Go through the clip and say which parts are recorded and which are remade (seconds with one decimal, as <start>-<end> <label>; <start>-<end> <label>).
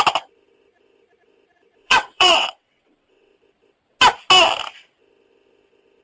0.0-1.8 recorded; 1.8-3.3 remade; 3.3-6.0 recorded